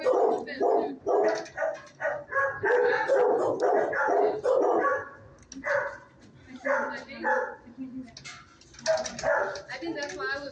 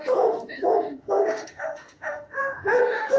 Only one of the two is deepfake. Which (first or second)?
second